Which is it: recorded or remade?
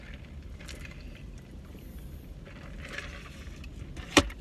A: recorded